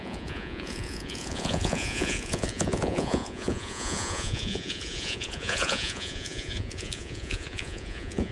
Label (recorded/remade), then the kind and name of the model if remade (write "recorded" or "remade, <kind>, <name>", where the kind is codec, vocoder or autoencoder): remade, vocoder, Vocos